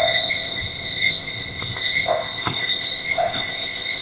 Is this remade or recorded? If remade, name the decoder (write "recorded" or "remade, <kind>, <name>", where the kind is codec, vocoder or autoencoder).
remade, codec, ZipCodec